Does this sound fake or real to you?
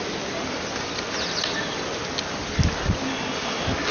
real